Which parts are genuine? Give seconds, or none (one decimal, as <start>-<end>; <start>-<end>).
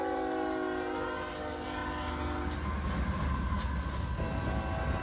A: 0.0-5.0